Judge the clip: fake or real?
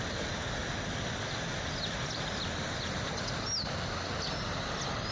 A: real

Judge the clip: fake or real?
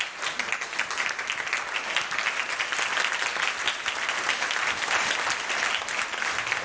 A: real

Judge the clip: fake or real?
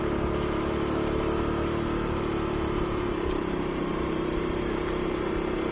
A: real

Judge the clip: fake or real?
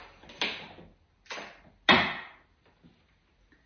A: real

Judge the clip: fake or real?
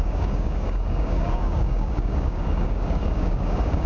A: fake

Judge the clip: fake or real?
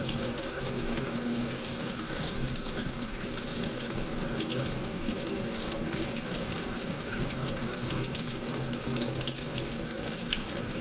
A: fake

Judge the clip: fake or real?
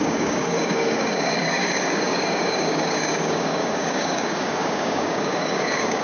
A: fake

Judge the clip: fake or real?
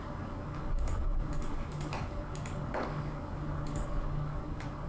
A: fake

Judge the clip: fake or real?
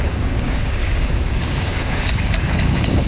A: fake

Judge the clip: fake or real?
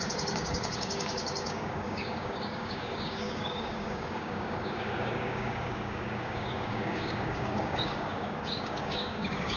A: fake